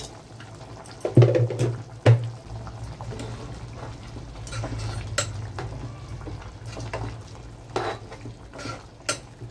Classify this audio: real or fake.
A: real